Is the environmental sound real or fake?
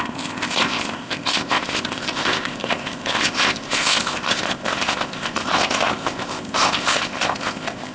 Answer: fake